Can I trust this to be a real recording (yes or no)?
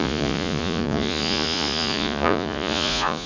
no